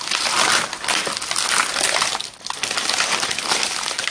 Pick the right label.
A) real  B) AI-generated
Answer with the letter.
A